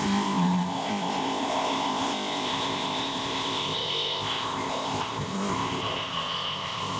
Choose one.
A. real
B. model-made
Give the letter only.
B